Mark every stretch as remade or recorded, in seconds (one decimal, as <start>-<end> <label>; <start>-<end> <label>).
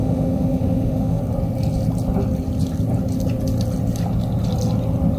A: 0.0-1.2 remade; 1.2-5.2 recorded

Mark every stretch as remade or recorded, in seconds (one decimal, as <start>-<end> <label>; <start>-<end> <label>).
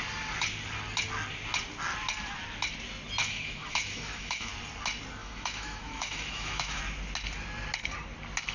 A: 0.0-3.2 recorded; 3.2-4.5 remade; 4.5-5.2 recorded; 5.2-6.8 remade; 6.8-8.5 recorded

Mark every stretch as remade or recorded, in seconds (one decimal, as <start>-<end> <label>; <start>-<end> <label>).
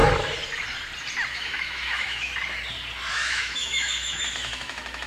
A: 0.0-1.3 recorded; 1.3-2.3 remade; 2.3-3.1 recorded; 3.1-5.1 remade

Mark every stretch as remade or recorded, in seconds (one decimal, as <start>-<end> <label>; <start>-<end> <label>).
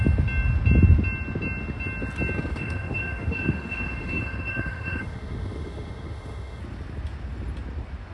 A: 0.0-2.5 recorded; 2.5-6.6 remade; 6.6-8.1 recorded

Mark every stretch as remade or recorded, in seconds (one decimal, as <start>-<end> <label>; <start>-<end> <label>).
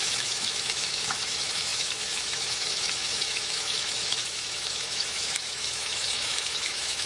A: 0.0-7.1 remade